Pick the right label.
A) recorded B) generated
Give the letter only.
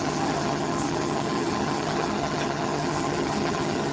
B